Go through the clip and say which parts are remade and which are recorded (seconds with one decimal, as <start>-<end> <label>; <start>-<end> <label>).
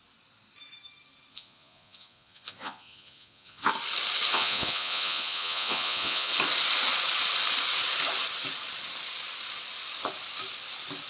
0.0-1.3 recorded; 1.3-3.7 remade; 3.7-4.3 recorded; 4.3-6.3 remade; 6.3-11.1 recorded